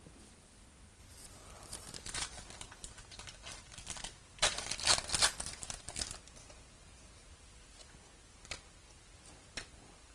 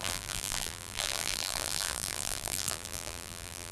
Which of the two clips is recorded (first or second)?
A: first